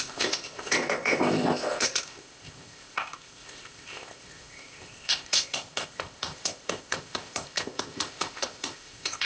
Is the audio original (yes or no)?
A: no